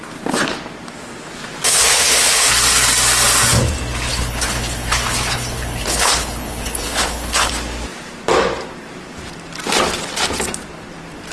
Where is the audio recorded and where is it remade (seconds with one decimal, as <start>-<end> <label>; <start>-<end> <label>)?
0.0-1.7 recorded; 1.7-2.5 remade; 2.5-4.1 recorded; 4.1-7.5 remade; 7.5-11.3 recorded